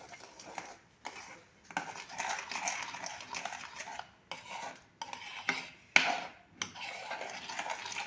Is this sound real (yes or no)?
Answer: yes